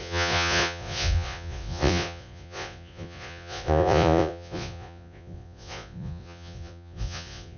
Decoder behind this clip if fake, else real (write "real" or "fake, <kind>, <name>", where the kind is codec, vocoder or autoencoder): fake, vocoder, Vocos